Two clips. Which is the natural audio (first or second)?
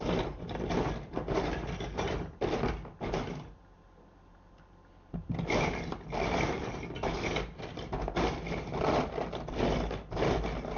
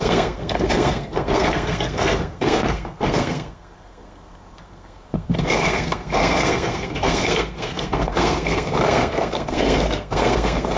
first